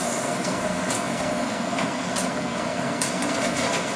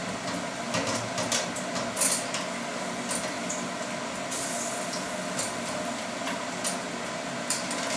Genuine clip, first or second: second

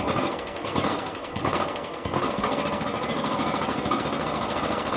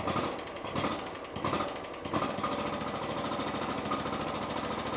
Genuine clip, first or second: second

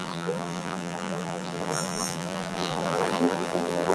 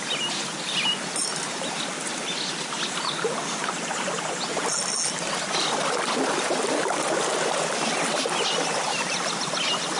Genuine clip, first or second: second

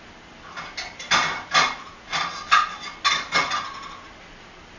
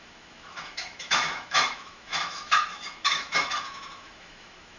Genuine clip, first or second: first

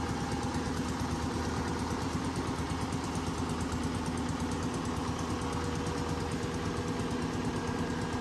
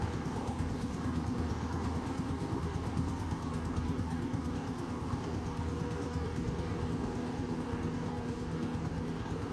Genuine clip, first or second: first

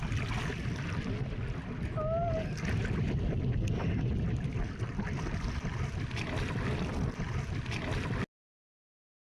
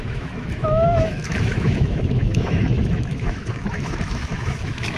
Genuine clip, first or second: first